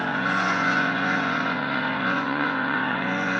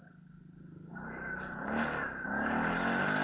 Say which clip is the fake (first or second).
first